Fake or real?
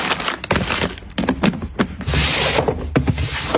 real